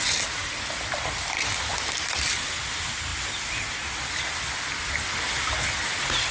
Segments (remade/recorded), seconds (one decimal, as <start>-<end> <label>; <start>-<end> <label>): 0.0-6.3 recorded